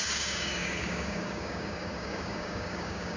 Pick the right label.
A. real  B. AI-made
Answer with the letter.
B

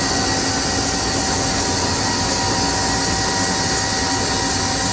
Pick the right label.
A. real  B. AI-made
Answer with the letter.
A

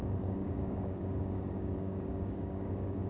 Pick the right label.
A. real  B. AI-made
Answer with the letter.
B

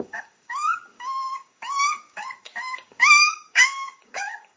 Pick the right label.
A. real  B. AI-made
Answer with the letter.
B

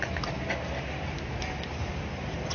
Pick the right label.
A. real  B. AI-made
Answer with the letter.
A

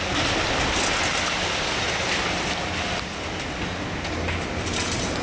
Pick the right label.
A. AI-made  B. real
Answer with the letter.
B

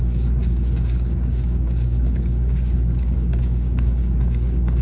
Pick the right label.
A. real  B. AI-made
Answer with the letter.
B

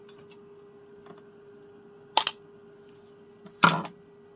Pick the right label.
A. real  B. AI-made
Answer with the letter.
A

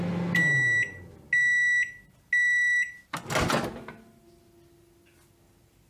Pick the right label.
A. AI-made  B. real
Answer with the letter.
B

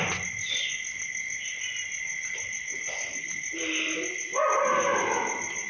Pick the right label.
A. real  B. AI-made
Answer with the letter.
A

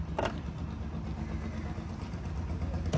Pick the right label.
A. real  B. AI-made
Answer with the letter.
A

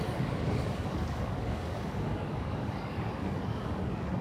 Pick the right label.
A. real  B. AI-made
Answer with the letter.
B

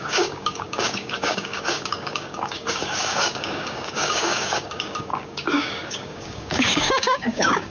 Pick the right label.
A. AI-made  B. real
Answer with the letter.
A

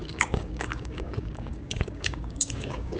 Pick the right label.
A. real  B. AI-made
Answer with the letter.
B